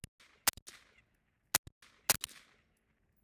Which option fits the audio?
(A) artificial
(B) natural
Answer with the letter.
B